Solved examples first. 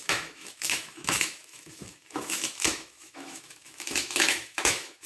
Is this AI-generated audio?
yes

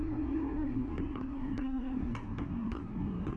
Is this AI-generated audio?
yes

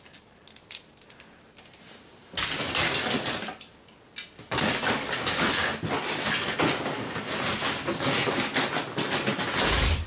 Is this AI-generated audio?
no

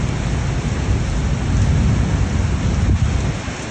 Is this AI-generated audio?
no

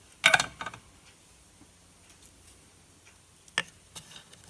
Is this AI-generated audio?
no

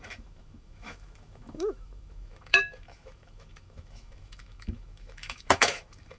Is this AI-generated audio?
yes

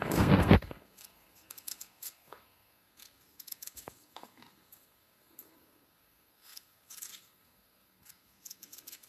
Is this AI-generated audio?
yes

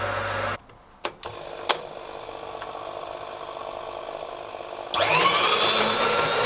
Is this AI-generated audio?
no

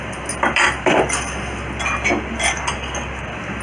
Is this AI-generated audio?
no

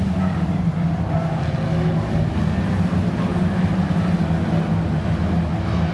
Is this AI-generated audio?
no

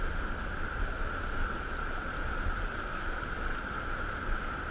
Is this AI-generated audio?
no